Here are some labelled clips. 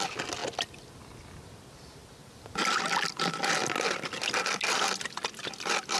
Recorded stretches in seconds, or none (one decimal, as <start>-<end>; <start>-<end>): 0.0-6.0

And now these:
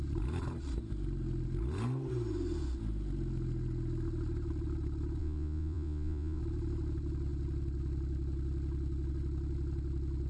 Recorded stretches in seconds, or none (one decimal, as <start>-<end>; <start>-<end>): 0.0-5.2; 6.4-10.3

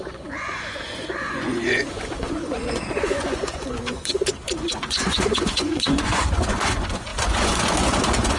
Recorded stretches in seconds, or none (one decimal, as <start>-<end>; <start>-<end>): none

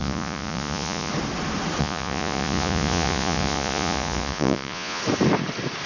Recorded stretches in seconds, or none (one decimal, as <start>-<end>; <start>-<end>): 1.1-1.8; 5.0-5.9

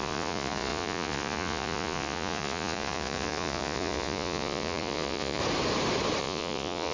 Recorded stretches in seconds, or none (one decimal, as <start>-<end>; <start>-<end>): 5.4-6.2